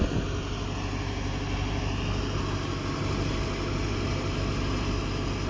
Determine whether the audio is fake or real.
real